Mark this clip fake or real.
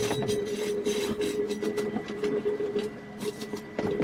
real